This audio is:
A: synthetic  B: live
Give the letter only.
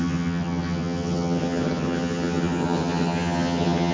A